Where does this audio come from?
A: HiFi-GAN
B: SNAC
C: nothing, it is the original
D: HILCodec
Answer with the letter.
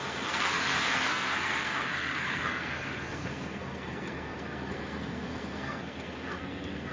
B